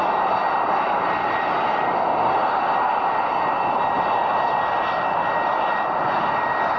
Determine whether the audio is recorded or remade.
recorded